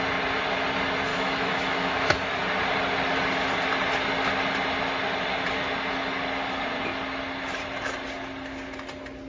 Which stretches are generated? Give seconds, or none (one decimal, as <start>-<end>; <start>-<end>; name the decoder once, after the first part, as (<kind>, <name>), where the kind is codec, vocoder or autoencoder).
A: 1.1-2.4 (autoencoder, DAC-VAE)